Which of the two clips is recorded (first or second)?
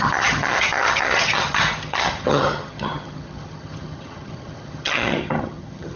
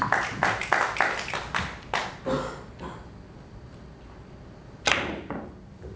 second